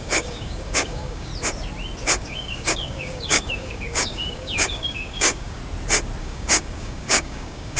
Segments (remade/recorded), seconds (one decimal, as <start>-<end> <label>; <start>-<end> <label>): 0.0-1.3 remade; 1.3-2.2 recorded; 2.2-5.6 remade; 5.6-6.2 recorded; 6.2-7.8 remade